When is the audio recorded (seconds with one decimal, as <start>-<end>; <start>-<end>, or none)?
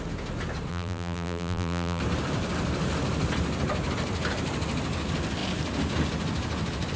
0.0-0.7; 2.0-7.0